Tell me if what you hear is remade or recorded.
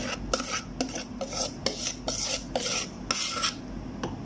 recorded